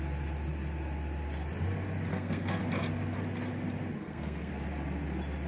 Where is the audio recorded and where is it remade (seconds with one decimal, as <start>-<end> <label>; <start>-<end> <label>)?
0.0-2.1 recorded; 2.1-2.6 remade; 2.6-4.0 recorded; 4.0-4.5 remade; 4.5-5.5 recorded